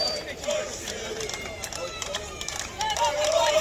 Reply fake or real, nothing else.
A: fake